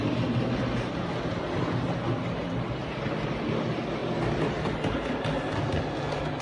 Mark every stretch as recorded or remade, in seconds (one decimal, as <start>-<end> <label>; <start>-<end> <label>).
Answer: 0.0-6.4 recorded